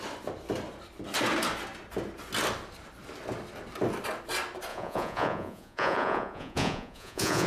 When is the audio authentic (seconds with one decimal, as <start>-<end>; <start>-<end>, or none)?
0.0-4.7